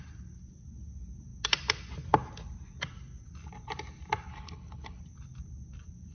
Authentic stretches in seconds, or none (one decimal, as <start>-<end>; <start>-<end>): 0.0-4.3; 5.0-6.1